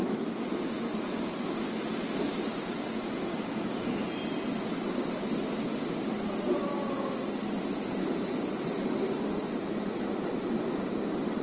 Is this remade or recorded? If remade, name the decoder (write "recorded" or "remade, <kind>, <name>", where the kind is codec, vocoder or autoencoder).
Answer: recorded